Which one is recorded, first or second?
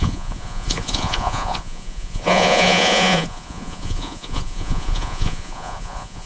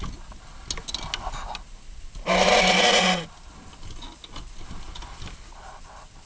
second